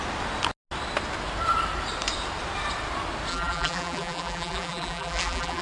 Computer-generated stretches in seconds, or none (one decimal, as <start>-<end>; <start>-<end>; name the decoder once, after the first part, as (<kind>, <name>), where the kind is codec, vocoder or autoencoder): 3.3-5.6 (vocoder, BigVGAN v2)